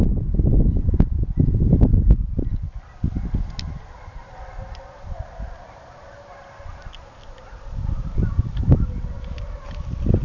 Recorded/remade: recorded